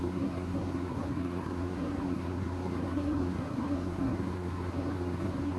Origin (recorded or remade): remade